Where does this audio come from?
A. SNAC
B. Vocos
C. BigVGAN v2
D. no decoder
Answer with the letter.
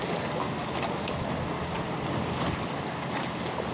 D